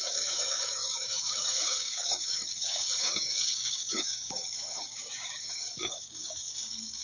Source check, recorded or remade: remade